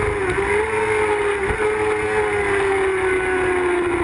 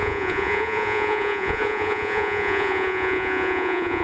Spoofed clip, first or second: second